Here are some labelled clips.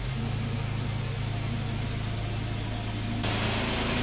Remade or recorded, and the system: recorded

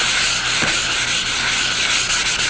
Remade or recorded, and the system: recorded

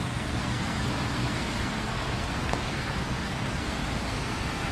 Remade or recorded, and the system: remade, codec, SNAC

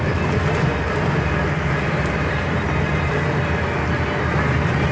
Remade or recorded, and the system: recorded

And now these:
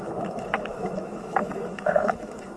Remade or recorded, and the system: remade, autoencoder, DAC-VAE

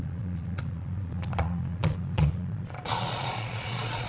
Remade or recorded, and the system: remade, vocoder, Vocos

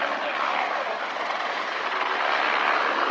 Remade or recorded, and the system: recorded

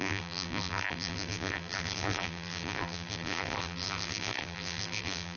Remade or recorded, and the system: remade, vocoder, BigVGAN v2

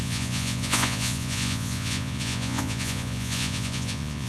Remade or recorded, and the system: remade, vocoder, Vocos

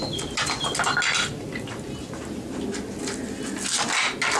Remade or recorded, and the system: recorded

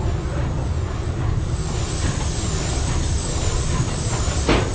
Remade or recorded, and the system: recorded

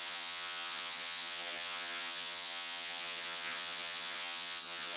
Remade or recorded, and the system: remade, vocoder, HiFi-GAN